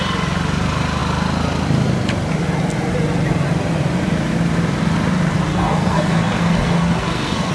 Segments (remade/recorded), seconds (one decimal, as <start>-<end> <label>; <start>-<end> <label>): 0.0-5.5 recorded; 5.5-7.5 remade